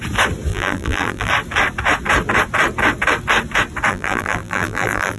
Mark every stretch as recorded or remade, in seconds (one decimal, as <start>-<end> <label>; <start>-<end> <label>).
0.0-0.5 recorded; 0.5-1.3 remade; 1.3-3.9 recorded; 3.9-5.2 remade